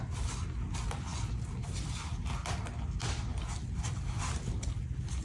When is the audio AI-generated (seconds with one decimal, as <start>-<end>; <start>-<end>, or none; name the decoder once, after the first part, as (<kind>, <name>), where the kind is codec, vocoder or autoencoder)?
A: none